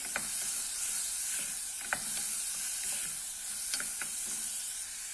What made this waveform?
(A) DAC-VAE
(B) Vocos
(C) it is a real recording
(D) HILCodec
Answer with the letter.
C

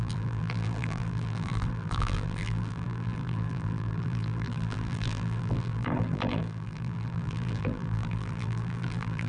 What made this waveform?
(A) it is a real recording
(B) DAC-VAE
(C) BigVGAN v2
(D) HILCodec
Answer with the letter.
C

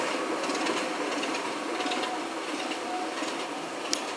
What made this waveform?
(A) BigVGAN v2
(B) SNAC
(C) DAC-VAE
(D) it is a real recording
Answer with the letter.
D